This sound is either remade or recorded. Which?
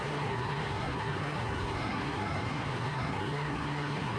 remade